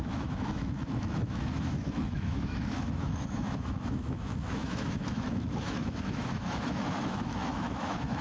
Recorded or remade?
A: remade